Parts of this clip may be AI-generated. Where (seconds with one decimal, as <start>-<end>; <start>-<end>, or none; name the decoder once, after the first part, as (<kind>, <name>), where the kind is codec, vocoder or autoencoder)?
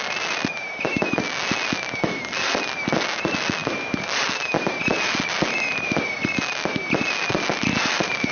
none